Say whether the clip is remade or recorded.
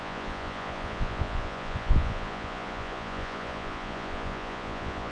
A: remade